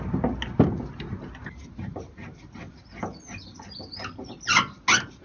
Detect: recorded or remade recorded